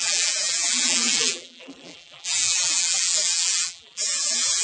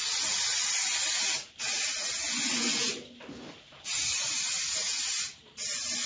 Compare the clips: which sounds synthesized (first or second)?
first